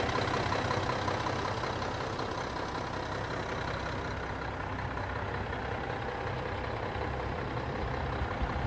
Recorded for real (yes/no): yes